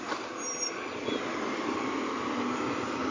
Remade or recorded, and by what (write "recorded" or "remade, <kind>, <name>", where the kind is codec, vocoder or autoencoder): recorded